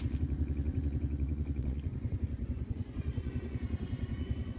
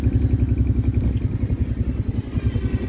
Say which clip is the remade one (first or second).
first